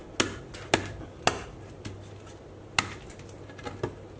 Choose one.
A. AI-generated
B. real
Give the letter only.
B